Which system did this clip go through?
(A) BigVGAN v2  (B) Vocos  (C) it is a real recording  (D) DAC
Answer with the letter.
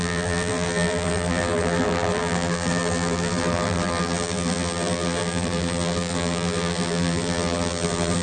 A